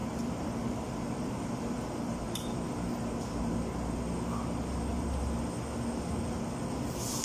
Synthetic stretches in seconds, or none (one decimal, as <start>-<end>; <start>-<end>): 0.0-4.0; 4.9-5.4